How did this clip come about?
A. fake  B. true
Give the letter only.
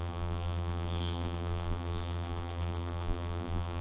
A